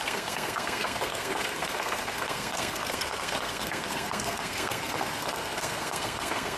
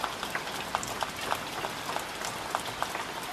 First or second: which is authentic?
second